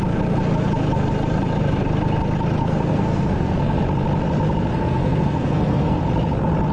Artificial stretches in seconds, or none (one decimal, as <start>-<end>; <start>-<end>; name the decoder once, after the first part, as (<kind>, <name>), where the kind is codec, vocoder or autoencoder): 2.6-3.8 (codec, SNAC); 4.7-6.0